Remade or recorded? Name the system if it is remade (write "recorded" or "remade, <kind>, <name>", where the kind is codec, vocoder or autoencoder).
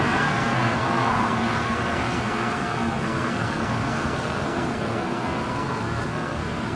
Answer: remade, codec, SNAC